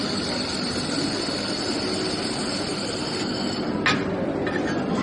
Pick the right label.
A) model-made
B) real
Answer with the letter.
B